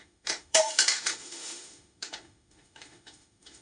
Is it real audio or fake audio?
fake